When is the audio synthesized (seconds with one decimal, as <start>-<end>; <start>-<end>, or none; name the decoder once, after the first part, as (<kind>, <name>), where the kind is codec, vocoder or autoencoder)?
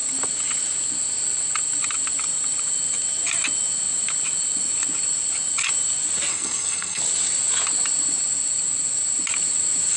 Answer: 6.3-7.0 (codec, SNAC)